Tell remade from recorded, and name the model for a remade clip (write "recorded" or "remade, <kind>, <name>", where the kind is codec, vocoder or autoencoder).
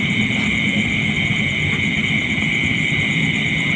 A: recorded